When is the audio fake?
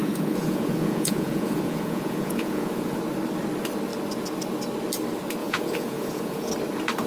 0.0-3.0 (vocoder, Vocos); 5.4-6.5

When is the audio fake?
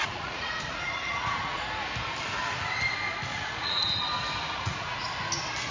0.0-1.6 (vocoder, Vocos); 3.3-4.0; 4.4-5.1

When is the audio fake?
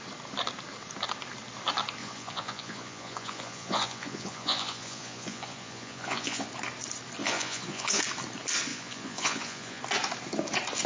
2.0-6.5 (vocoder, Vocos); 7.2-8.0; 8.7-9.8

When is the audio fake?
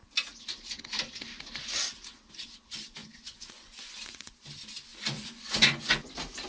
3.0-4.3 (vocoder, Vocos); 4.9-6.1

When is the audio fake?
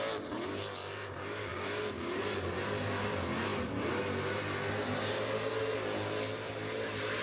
none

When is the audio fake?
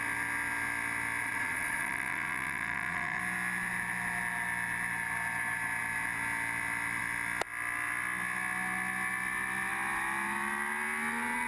1.2-3.2 (vocoder, Vocos)